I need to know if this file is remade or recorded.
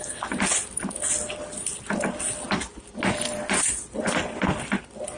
recorded